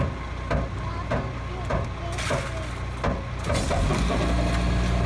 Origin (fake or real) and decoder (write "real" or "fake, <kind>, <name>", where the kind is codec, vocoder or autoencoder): real